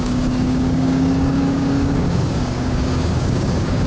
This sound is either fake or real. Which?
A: fake